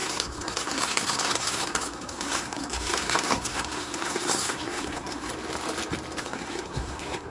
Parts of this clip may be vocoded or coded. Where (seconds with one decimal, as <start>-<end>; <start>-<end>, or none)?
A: 0.0-5.3; 6.2-7.3